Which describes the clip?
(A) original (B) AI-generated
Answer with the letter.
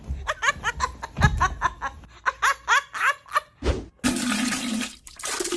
A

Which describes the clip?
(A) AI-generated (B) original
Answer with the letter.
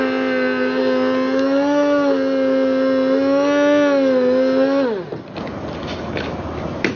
B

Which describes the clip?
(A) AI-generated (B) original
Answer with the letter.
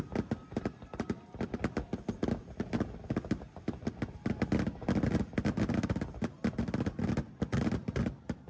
B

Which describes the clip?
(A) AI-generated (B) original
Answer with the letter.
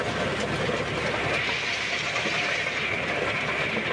B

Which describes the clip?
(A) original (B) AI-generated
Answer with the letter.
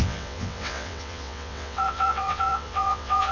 B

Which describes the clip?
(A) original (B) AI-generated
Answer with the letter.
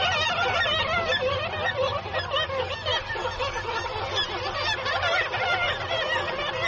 A